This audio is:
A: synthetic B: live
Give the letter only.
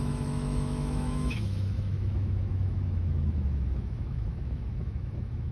A